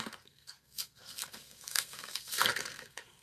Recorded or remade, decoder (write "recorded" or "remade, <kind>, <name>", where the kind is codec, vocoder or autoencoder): remade, codec, SNAC